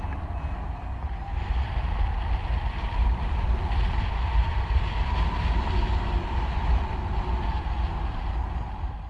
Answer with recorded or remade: recorded